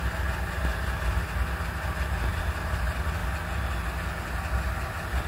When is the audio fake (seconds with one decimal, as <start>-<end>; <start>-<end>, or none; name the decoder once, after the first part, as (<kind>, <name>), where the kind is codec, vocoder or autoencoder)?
none